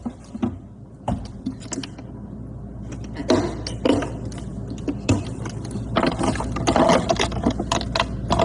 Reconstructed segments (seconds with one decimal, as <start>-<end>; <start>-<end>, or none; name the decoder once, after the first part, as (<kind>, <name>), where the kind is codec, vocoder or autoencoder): none